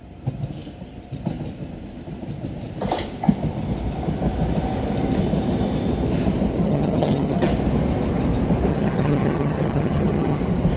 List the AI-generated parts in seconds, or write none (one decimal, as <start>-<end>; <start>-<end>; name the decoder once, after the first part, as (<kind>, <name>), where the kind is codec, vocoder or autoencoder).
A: 6.6-7.5 (vocoder, HiFi-GAN); 8.7-10.4